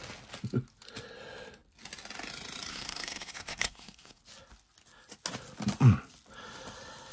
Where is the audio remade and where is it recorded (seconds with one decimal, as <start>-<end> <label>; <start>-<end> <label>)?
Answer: 0.0-2.7 recorded; 2.7-4.2 remade; 4.2-7.1 recorded